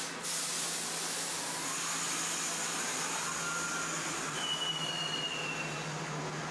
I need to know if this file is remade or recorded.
recorded